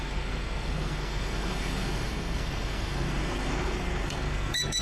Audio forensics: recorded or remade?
remade